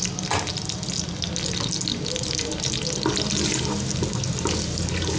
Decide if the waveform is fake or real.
real